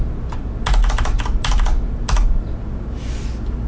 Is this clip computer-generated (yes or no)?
no